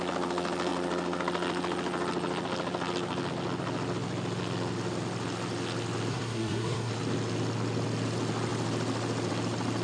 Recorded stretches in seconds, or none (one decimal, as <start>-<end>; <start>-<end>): 0.0-6.1; 6.9-9.8